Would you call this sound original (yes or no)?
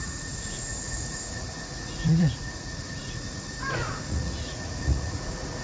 no